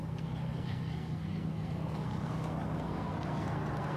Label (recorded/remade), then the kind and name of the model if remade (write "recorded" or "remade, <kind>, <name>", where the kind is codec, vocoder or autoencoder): remade, codec, SNAC